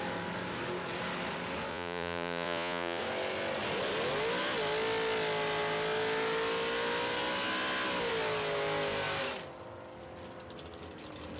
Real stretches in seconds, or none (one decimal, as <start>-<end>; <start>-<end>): 0.0-1.7; 3.0-11.4